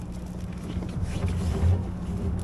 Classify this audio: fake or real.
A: real